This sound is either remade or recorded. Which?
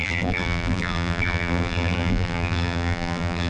remade